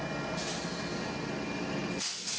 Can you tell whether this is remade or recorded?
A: recorded